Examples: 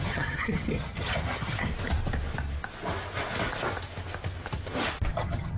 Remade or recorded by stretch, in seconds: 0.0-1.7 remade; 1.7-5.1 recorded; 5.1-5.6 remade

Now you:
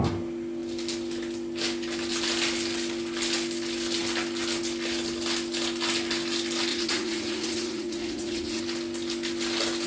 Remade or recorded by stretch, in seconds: 0.0-6.7 recorded; 6.7-8.6 remade; 8.6-9.9 recorded

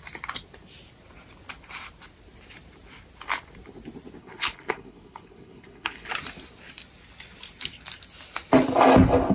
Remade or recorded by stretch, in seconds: 0.0-4.2 recorded; 4.2-6.1 remade; 6.1-9.3 recorded

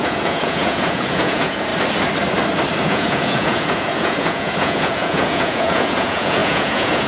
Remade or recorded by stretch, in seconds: 0.0-1.7 remade; 1.7-2.8 recorded; 2.8-7.1 remade

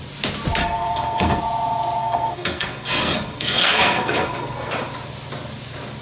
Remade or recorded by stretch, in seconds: 0.0-0.6 recorded; 0.6-1.4 remade; 1.4-2.0 recorded; 2.0-4.7 remade; 4.7-6.0 recorded

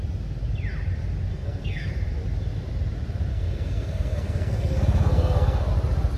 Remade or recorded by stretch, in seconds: 0.0-1.3 recorded; 1.3-1.9 remade; 1.9-3.3 recorded; 3.3-5.7 remade; 5.7-6.2 recorded

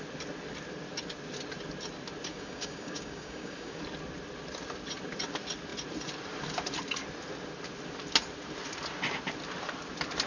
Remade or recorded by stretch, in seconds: 0.0-2.3 recorded; 2.3-3.8 remade; 3.8-10.3 recorded